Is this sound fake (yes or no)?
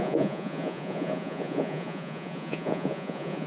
yes